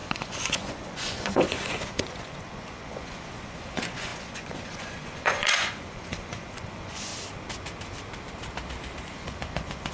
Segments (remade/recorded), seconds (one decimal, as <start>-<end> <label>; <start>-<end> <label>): 0.0-7.1 remade; 7.1-9.0 recorded; 9.0-9.9 remade